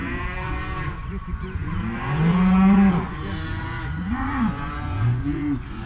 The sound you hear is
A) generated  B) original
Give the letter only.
A